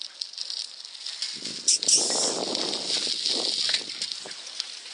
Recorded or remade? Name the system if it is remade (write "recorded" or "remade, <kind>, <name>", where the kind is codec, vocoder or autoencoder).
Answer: recorded